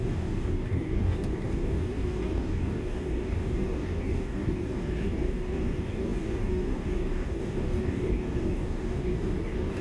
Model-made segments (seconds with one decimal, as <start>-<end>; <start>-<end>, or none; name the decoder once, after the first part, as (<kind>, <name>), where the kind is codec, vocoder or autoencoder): 0.0-9.8 (codec, DAC)